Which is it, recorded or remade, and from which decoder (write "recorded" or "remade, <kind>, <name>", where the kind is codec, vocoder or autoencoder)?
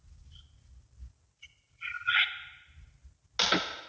recorded